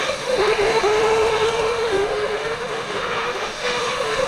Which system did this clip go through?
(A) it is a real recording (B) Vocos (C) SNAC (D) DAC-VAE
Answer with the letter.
D